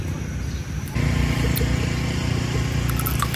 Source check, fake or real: real